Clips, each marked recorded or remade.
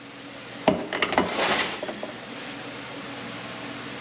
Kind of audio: recorded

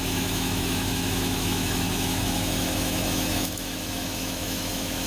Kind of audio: remade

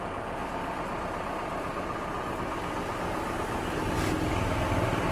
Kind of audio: recorded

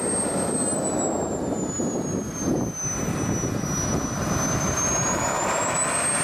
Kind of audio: recorded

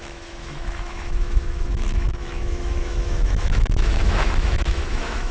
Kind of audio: remade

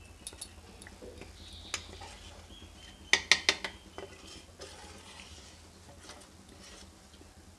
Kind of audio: recorded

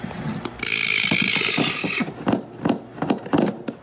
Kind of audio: recorded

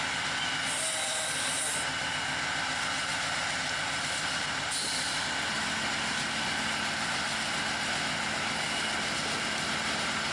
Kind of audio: recorded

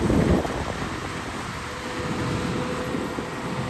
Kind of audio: recorded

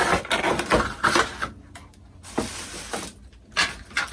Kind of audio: recorded